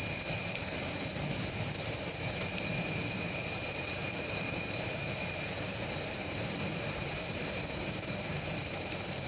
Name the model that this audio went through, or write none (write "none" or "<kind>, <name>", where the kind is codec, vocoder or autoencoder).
vocoder, BigVGAN v2